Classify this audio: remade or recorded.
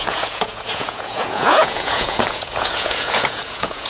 remade